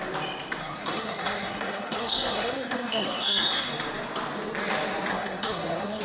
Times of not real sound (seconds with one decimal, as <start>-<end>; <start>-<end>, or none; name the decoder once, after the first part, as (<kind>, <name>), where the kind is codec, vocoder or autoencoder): 0.6-3.7 (codec, SNAC); 5.1-6.0